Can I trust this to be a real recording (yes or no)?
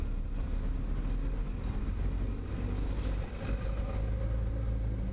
yes